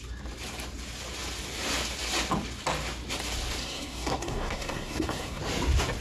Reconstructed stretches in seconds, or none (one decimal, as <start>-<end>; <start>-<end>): 3.6-5.4